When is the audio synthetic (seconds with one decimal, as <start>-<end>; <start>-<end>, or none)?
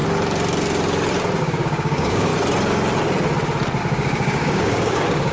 1.4-2.3; 3.8-5.3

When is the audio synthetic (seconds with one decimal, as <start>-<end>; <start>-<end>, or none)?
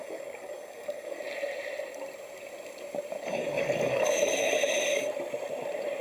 0.0-1.2; 3.3-4.5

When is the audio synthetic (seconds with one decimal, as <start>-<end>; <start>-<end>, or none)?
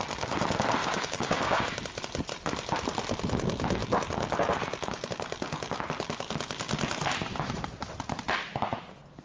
0.8-1.8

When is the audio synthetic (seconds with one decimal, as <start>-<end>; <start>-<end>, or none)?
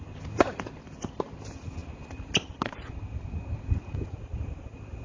none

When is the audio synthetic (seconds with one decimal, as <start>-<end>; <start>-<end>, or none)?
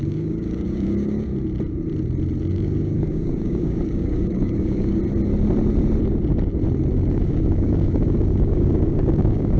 0.0-1.3; 2.5-5.0; 6.9-9.6